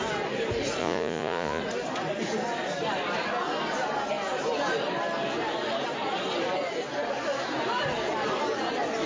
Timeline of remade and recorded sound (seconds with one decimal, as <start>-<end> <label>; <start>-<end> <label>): 0.0-0.8 recorded; 0.8-1.6 remade; 1.6-9.1 recorded